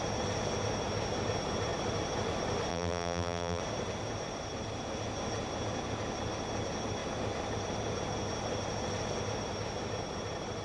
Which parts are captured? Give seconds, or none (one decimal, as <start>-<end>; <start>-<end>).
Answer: 0.0-2.7; 3.6-10.6